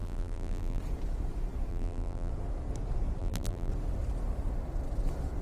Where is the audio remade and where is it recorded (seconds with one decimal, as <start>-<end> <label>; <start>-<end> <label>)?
0.0-0.8 remade; 0.8-1.7 recorded; 1.7-2.3 remade; 2.3-3.2 recorded; 3.2-3.7 remade; 3.7-5.4 recorded